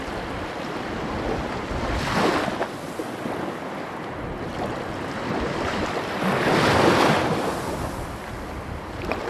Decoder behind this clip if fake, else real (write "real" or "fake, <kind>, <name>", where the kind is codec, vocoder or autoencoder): real